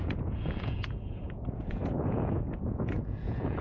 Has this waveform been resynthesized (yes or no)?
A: yes